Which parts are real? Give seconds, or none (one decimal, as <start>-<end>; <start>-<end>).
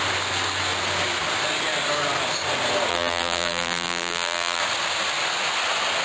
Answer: 0.0-2.9; 4.6-6.0